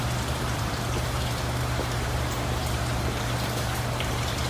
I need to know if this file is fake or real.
fake